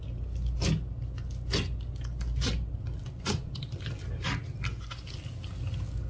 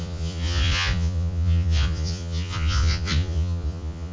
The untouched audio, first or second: first